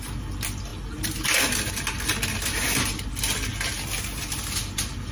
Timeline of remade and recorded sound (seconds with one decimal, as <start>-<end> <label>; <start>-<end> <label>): 0.0-5.1 recorded